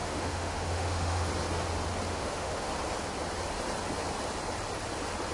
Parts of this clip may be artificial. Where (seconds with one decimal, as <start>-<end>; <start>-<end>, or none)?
0.0-1.3; 2.1-2.7